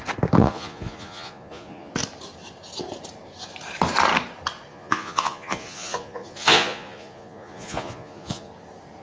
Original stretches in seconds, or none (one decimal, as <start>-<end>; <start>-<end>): 0.0-0.4; 1.9-4.7; 8.5-9.0